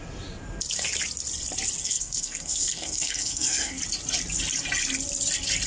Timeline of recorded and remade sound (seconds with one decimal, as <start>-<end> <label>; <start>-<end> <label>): 0.0-1.8 recorded; 1.8-3.8 remade; 3.8-5.7 recorded